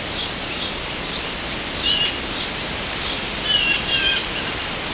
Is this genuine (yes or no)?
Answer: yes